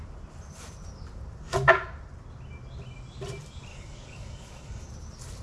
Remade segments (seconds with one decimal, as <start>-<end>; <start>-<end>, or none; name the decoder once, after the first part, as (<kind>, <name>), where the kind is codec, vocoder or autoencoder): 3.7-4.9 (codec, DAC)